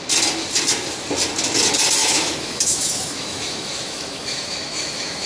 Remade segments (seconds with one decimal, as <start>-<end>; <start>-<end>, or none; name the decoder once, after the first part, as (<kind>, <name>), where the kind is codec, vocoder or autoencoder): 2.0-5.3 (autoencoder, DAC-VAE)